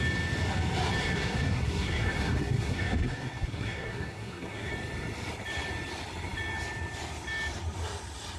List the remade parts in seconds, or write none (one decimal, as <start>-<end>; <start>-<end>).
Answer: 1.0-4.7